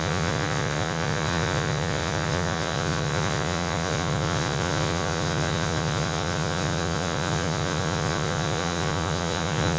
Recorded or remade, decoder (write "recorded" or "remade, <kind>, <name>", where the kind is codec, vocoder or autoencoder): remade, vocoder, Vocos